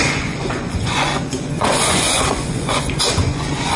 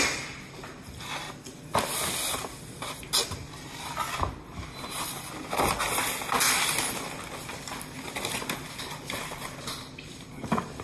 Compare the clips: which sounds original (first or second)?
second